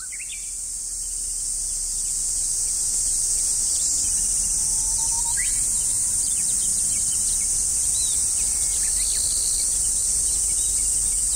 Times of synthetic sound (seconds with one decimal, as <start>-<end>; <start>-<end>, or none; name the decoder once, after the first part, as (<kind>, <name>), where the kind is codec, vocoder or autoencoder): none

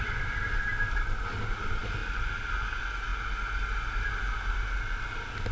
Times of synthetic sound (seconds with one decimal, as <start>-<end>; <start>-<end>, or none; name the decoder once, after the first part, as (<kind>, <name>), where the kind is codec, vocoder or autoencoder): none

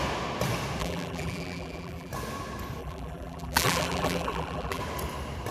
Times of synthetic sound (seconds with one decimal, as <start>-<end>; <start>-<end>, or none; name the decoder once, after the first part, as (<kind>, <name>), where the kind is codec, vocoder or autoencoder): 0.8-2.1 (vocoder, BigVGAN v2); 2.8-4.8

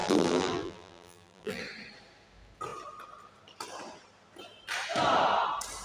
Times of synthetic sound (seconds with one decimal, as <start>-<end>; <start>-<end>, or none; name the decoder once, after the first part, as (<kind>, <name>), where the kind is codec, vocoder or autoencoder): 0.0-1.6 (vocoder, BigVGAN v2)